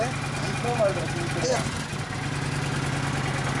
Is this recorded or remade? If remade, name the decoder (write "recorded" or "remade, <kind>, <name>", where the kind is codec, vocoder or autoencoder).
recorded